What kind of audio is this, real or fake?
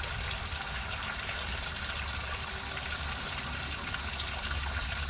real